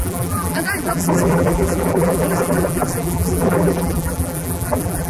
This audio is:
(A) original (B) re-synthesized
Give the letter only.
B